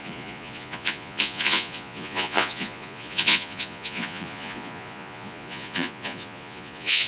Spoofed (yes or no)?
yes